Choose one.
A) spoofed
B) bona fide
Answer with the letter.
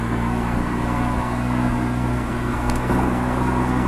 A